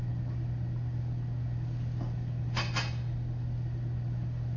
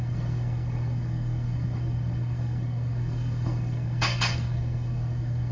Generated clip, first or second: second